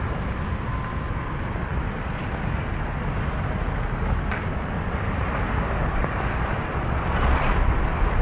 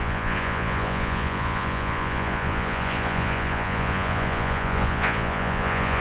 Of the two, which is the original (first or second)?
first